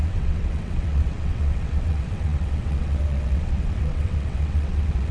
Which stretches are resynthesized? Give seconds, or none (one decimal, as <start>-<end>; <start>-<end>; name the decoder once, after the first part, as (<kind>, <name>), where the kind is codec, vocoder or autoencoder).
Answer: 0.0-5.1 (vocoder, WaveNeXt)